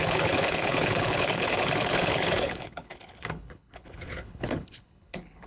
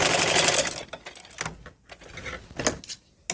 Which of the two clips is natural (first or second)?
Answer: second